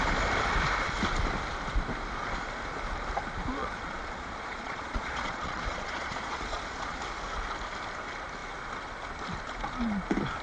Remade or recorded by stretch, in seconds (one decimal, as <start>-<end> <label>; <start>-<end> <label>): 0.0-3.6 recorded; 3.6-7.0 remade; 7.0-10.4 recorded